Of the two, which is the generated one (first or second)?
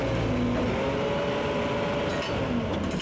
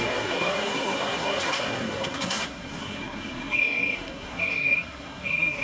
second